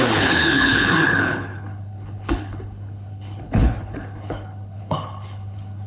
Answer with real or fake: fake